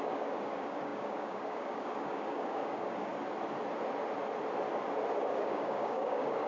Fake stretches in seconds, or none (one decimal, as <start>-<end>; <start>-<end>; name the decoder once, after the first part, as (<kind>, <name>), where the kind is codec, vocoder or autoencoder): 0.0-3.1 (codec, DAC); 5.3-6.5